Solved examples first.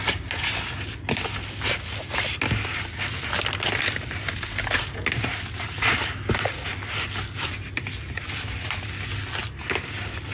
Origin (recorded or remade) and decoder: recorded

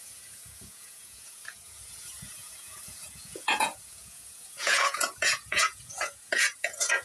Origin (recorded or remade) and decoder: remade, vocoder, Vocos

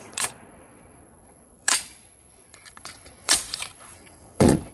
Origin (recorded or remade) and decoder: remade, vocoder, Vocos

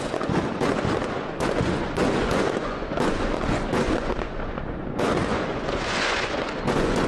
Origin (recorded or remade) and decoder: remade, vocoder, Vocos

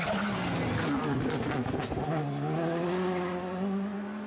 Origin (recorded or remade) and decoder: recorded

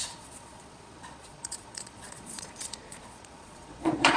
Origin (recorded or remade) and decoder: remade, vocoder, Vocos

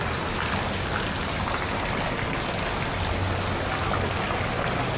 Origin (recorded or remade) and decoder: recorded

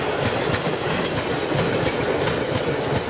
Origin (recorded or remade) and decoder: recorded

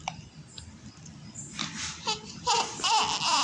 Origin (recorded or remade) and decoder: recorded